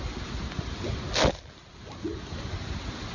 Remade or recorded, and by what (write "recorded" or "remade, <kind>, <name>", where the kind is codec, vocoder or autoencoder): recorded